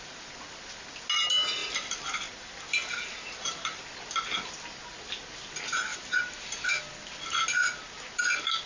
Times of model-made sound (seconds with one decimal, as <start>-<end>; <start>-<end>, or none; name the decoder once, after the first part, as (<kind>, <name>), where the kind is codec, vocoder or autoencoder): 1.6-3.8 (vocoder, BigVGAN v2); 5.9-6.8; 7.6-8.2